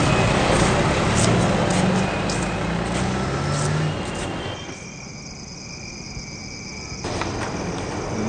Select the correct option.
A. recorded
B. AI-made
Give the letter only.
A